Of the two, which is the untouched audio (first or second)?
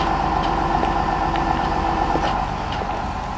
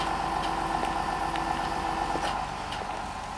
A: second